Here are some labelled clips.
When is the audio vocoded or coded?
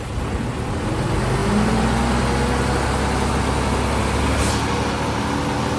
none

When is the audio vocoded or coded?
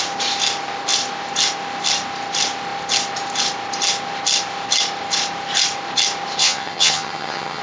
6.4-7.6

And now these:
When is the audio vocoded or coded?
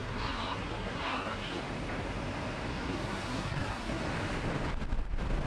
0.0-1.6; 2.7-4.0